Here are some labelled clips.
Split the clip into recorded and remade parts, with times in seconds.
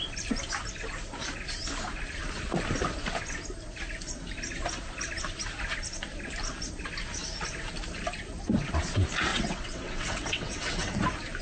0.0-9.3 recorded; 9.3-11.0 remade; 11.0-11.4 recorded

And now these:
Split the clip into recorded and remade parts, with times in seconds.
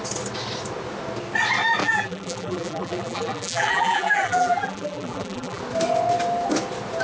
0.0-1.8 recorded; 1.8-5.6 remade; 5.6-7.0 recorded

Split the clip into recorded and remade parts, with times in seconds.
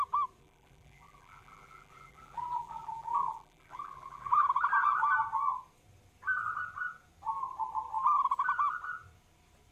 0.0-0.4 recorded; 0.4-4.4 remade; 4.4-9.7 recorded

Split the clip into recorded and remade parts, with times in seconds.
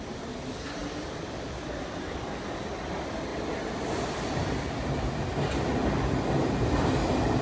0.0-7.4 recorded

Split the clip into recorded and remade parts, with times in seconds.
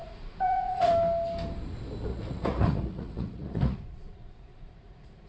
0.0-0.9 remade; 0.9-2.1 recorded; 2.1-5.3 remade